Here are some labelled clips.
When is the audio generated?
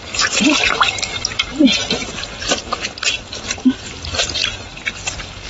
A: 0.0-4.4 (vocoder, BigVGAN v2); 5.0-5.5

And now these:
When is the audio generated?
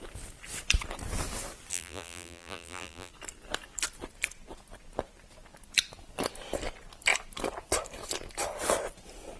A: 1.7-3.1 (vocoder, BigVGAN v2)